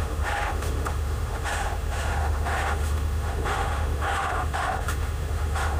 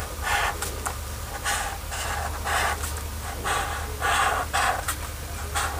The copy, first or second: first